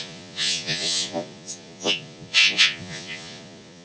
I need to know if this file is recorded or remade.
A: remade